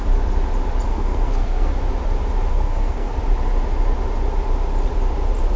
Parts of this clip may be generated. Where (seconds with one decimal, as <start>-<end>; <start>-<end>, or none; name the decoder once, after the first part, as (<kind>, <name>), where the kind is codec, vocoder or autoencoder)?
0.9-1.7 (codec, SNAC); 2.5-3.1